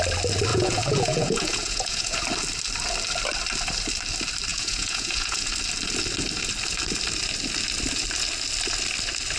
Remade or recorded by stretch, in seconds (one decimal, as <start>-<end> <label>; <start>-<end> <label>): 0.0-0.5 recorded; 0.5-2.2 remade; 2.2-4.5 recorded; 4.5-5.5 remade; 5.5-9.4 recorded